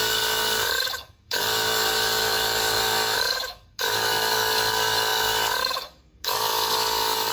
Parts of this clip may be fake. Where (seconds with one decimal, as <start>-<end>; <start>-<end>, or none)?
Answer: 0.0-7.3